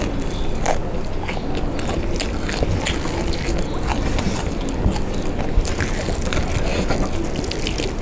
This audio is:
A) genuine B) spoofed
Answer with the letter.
A